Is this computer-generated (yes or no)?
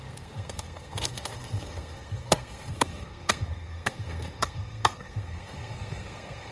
yes